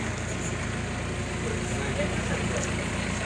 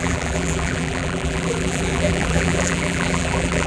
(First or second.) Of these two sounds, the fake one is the second